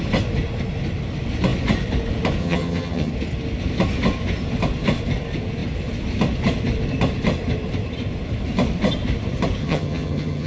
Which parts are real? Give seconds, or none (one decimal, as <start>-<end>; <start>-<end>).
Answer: 0.0-2.4; 3.1-9.6